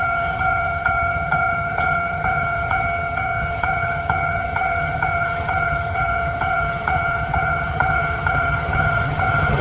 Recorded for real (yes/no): no